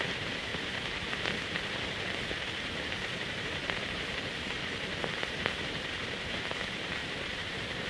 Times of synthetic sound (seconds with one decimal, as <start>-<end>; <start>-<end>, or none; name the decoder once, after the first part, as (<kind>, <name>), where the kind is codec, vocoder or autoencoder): 0.0-4.6 (vocoder, BigVGAN v2); 5.3-7.9